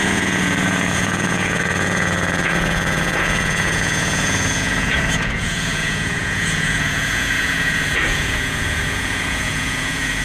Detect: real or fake fake